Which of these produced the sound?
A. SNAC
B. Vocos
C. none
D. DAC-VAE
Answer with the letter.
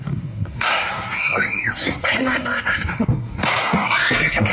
A